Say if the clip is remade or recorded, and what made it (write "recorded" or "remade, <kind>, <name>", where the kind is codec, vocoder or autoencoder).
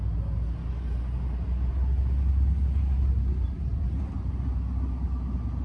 recorded